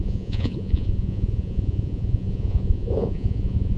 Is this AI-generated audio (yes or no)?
yes